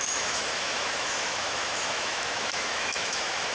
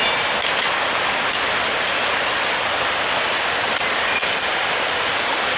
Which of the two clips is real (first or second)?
second